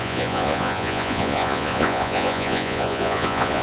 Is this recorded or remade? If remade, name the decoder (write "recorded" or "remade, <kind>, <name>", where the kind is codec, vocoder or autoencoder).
remade, vocoder, Vocos